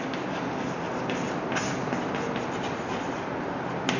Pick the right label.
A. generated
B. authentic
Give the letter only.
B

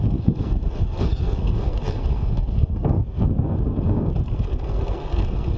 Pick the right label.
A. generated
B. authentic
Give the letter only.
A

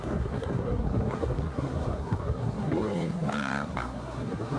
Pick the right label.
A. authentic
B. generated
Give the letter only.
B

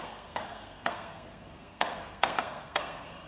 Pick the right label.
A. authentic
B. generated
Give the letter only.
B